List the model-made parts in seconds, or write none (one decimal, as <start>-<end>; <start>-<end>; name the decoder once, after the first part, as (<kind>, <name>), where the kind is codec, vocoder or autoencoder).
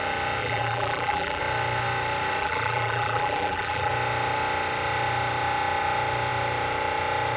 0.4-1.4 (vocoder, BigVGAN v2); 2.4-3.9